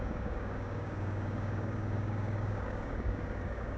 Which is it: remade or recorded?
remade